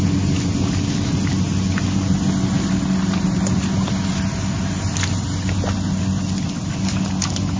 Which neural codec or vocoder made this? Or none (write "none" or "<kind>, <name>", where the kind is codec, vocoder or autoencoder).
none